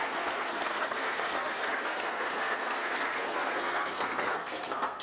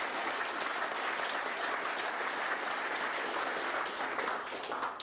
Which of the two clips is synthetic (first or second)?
first